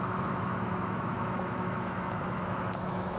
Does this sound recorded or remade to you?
remade